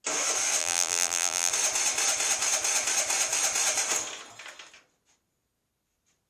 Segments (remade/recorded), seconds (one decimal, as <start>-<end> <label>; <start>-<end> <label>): 0.0-0.6 recorded; 0.6-1.5 remade; 1.5-6.3 recorded